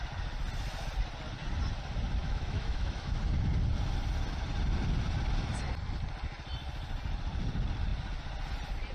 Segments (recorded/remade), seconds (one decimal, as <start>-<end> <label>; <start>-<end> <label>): 0.0-2.2 recorded; 2.2-3.2 remade; 3.2-8.9 recorded